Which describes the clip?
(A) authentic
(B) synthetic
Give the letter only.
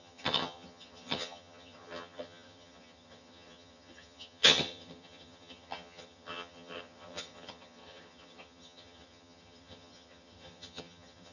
B